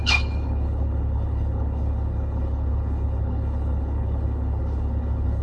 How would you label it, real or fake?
fake